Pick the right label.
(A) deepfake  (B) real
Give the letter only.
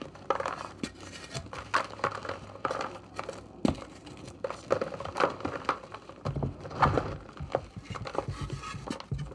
B